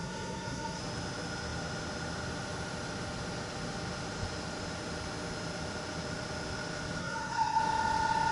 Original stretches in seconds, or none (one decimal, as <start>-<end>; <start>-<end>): 0.8-7.0; 7.6-8.3